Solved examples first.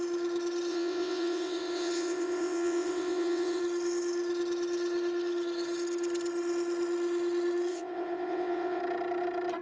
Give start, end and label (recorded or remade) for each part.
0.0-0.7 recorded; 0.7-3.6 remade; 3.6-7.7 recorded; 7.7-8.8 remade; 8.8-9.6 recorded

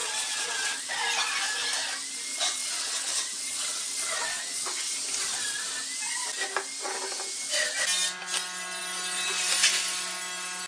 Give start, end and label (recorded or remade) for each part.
0.0-0.9 remade; 0.9-2.3 recorded; 2.3-4.9 remade; 4.9-10.7 recorded

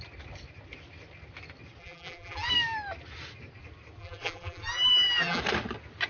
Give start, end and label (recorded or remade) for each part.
0.0-1.8 recorded; 1.8-2.5 remade; 2.5-4.0 recorded; 4.0-5.4 remade; 5.4-6.1 recorded

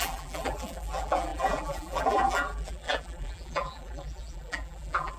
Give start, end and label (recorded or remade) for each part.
0.0-5.2 remade